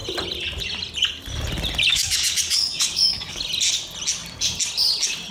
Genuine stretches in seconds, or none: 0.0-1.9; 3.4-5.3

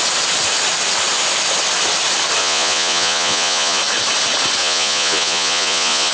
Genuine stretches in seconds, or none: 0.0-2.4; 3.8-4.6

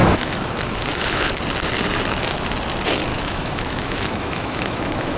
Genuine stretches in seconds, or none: 1.3-3.1